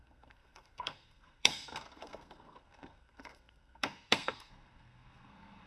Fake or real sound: fake